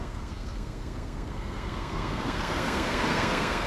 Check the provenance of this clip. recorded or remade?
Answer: remade